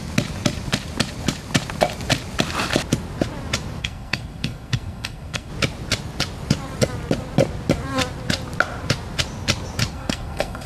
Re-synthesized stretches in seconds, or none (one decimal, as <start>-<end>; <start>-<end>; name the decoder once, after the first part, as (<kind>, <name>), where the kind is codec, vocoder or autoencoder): 3.8-5.5 (codec, SNAC); 9.9-10.7